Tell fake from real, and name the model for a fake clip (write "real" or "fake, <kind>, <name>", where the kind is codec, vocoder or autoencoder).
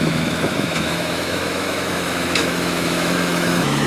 fake, autoencoder, DAC-VAE